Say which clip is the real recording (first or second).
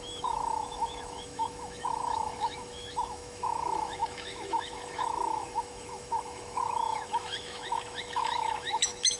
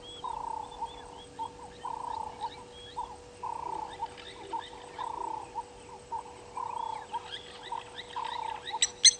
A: second